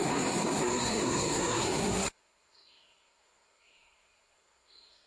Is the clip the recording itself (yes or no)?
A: no